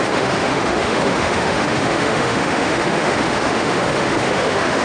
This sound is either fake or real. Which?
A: fake